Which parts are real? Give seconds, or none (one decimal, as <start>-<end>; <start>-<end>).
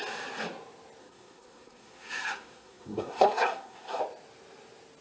0.0-1.0; 4.0-5.0